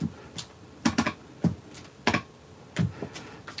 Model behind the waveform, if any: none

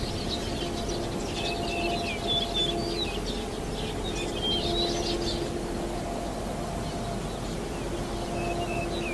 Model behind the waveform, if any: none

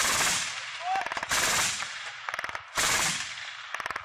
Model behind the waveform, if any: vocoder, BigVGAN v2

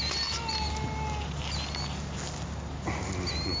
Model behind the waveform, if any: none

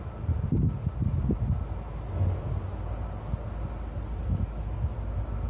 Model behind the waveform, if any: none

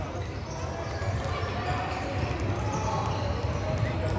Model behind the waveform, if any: none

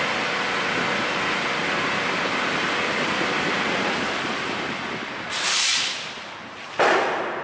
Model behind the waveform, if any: none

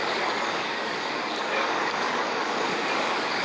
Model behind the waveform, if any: codec, DAC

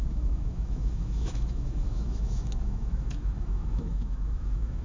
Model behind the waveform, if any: autoencoder, DAC-VAE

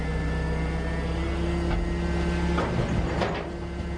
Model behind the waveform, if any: none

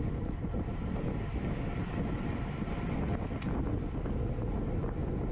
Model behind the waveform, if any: none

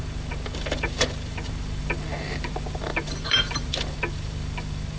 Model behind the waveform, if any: vocoder, BigVGAN v2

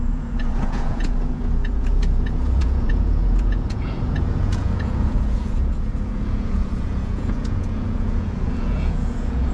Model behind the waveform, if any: vocoder, Vocos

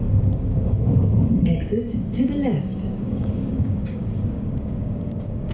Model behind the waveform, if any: codec, DAC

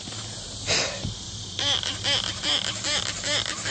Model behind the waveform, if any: none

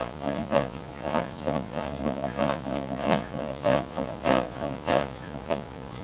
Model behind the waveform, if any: vocoder, Vocos